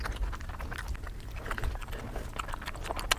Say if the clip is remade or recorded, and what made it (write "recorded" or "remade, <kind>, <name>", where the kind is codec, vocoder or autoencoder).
recorded